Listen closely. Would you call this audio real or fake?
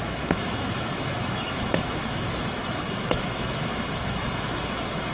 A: fake